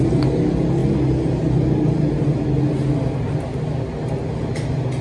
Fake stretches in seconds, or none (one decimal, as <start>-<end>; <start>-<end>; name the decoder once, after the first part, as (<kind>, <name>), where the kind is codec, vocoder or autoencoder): none